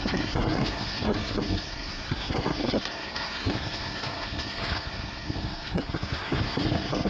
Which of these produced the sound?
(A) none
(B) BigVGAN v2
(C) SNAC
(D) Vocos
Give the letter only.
C